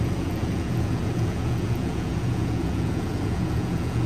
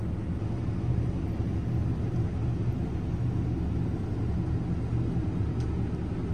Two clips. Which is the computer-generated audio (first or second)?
first